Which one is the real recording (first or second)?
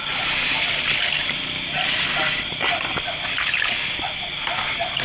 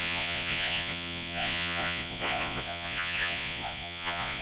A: first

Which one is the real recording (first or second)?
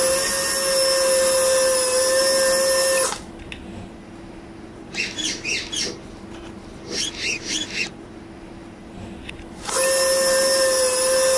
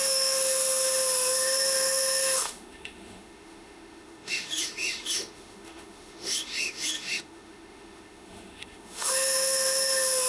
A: first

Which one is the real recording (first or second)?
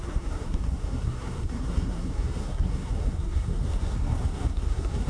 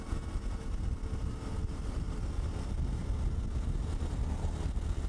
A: second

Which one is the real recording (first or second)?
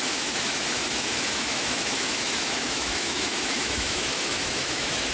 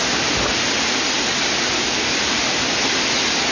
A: second